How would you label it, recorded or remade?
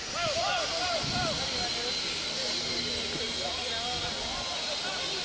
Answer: recorded